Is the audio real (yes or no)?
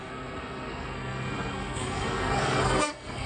no